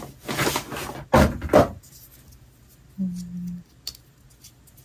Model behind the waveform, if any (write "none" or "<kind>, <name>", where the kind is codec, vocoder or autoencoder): none